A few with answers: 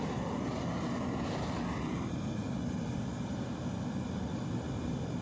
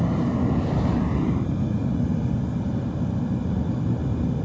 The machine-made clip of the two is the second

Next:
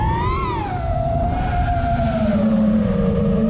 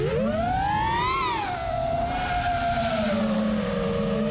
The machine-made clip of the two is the first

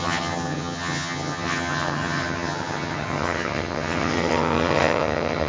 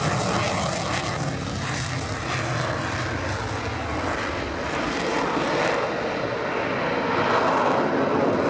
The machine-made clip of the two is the first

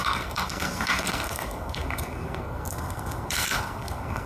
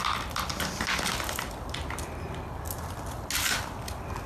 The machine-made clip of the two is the first